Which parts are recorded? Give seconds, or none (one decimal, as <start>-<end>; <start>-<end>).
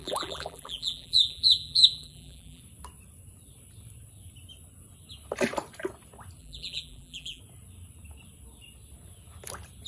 2.6-6.4; 7.4-9.9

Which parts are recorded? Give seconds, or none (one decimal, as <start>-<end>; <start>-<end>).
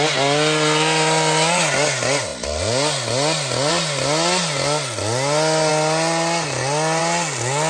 0.0-7.7